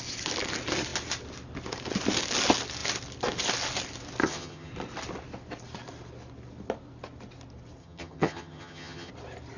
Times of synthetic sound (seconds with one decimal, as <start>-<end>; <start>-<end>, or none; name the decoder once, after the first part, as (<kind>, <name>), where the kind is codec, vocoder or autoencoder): 4.2-4.7 (vocoder, HiFi-GAN); 7.8-9.1